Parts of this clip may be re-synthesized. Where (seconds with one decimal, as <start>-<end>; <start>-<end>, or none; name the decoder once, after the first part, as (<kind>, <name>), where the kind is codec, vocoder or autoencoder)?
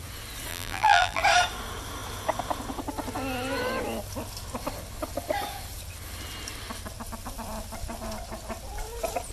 0.5-1.2 (vocoder, BigVGAN v2)